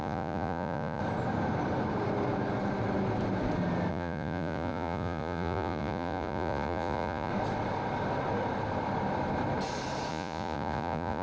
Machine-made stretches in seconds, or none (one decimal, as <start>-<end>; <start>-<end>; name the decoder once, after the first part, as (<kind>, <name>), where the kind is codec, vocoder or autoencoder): 0.0-1.0 (vocoder, Vocos); 3.9-7.3; 10.1-11.2